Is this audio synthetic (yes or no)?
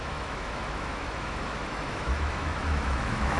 yes